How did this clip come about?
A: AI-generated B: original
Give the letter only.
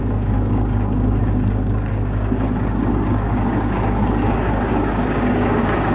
A